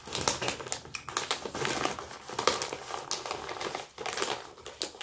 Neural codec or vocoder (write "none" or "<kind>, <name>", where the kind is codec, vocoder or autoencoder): none